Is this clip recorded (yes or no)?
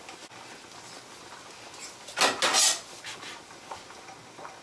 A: yes